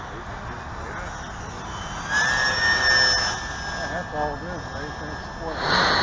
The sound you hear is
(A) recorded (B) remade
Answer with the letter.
A